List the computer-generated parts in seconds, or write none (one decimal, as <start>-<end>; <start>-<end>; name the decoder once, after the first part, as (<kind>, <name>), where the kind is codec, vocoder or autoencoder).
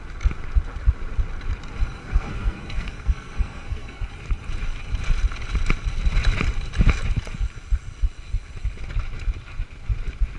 2.0-4.1 (codec, SNAC)